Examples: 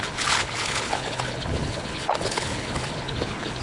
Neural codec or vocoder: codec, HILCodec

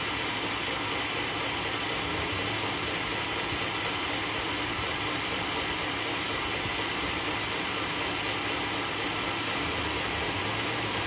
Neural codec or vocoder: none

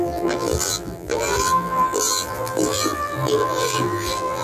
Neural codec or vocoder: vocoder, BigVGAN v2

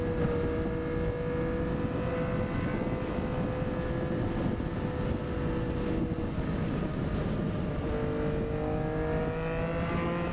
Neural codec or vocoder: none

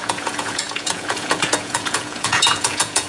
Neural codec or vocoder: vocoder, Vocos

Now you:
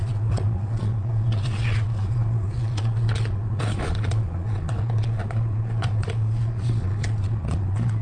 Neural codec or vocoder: vocoder, Vocos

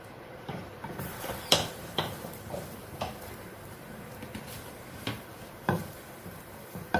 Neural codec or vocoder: vocoder, BigVGAN v2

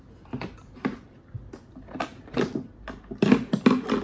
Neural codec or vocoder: none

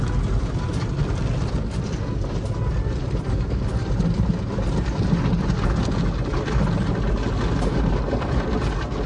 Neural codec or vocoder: none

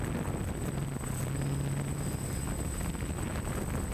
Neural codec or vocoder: none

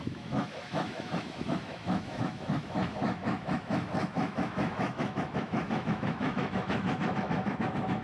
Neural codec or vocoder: autoencoder, DAC-VAE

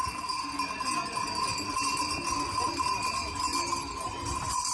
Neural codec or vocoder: none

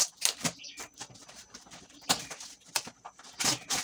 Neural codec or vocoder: none